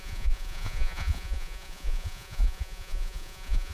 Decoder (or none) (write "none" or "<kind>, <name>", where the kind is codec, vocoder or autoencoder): vocoder, Vocos